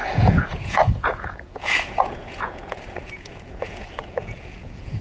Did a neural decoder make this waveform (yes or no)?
yes